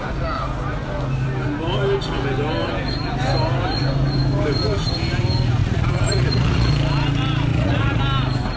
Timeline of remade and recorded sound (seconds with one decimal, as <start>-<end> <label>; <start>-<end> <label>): 0.0-5.6 recorded; 5.6-6.7 remade; 6.7-7.5 recorded; 7.5-8.0 remade; 8.0-8.6 recorded